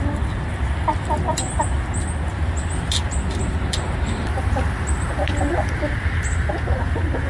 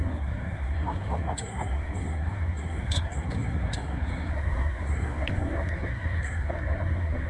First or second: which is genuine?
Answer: first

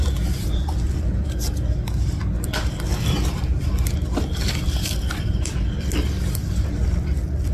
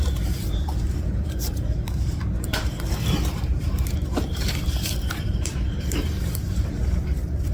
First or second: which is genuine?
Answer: first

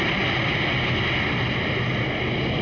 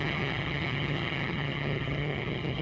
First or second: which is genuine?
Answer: first